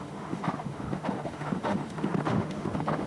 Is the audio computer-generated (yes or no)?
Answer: yes